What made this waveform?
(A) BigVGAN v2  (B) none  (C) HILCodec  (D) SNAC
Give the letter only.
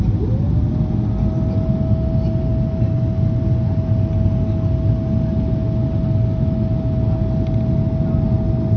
B